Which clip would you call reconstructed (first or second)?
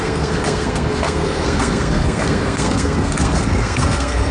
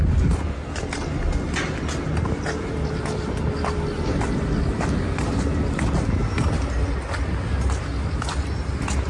first